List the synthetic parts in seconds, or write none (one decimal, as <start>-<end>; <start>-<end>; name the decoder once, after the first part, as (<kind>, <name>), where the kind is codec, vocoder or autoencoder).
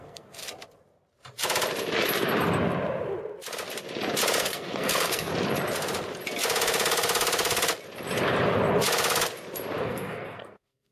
0.0-0.4 (codec, SNAC); 4.4-5.3; 9.8-10.9